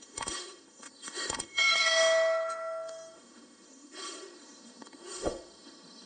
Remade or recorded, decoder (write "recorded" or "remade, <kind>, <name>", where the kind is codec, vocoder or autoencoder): remade, autoencoder, DAC-VAE